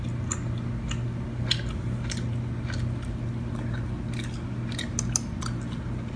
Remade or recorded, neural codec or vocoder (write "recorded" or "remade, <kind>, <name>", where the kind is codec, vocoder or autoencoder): recorded